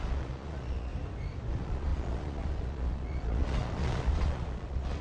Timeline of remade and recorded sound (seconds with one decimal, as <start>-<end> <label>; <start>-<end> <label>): 0.0-0.9 remade; 0.9-1.5 recorded; 1.5-5.0 remade